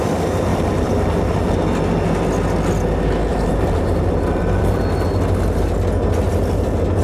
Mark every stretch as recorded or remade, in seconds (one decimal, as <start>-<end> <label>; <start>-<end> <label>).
0.0-0.5 recorded; 0.5-1.6 remade; 1.6-3.3 recorded; 3.3-4.8 remade; 4.8-7.0 recorded